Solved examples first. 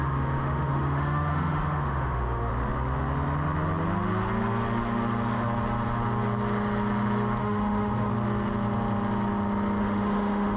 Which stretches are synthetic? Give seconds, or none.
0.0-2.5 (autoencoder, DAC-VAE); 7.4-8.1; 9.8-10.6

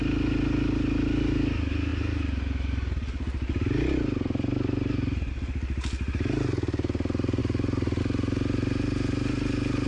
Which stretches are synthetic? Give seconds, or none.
none

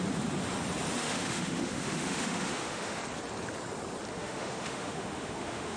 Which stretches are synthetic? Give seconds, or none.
1.0-3.0 (autoencoder, DAC-VAE); 4.1-5.8

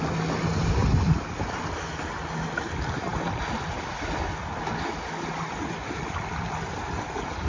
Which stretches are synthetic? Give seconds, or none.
none

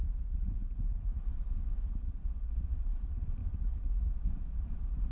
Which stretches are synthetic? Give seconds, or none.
0.0-0.6 (vocoder, BigVGAN v2); 2.7-3.4; 4.0-5.1

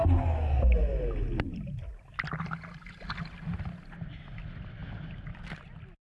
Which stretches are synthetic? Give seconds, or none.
none

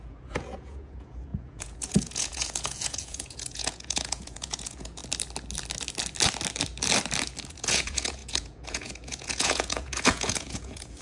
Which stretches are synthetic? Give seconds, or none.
0.0-5.0 (vocoder, Vocos); 7.5-11.0